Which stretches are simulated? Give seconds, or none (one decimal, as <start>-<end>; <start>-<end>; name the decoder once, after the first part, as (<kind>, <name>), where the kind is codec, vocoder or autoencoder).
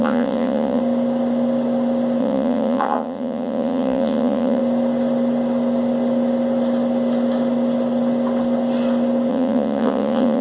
0.0-0.8 (vocoder, Vocos); 2.2-4.6; 9.3-10.4